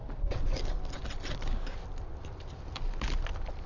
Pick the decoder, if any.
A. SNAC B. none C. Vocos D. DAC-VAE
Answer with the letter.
B